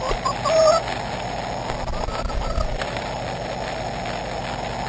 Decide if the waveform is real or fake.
real